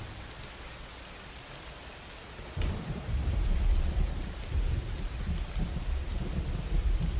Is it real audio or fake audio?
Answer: real